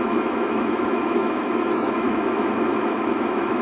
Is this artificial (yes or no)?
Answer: yes